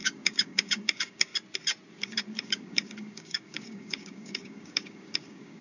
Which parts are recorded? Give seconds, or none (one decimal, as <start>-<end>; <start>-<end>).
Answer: 1.3-1.9